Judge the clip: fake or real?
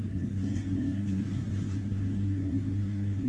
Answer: fake